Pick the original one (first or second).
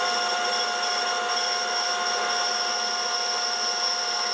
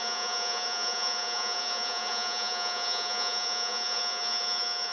first